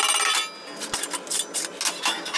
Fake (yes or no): no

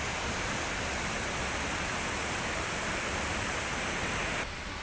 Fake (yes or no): no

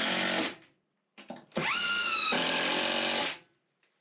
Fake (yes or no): no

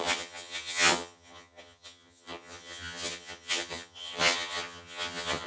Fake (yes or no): yes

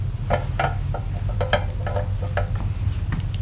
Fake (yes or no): no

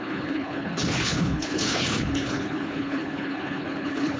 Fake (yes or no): yes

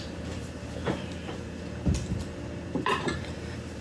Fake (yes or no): yes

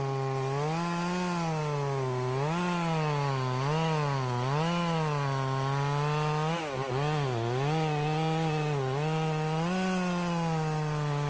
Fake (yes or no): no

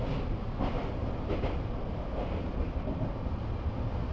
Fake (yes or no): no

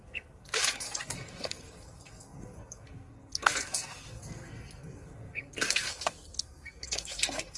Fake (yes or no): yes